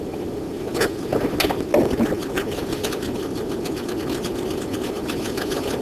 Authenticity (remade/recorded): recorded